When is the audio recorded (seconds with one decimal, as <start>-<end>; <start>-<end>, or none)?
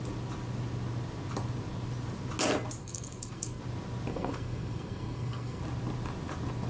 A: 0.0-2.8; 3.6-4.1; 5.6-6.7